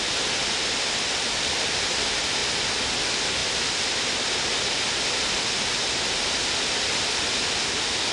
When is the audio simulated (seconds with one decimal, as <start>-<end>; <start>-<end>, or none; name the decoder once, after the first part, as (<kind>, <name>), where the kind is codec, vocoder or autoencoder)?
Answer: none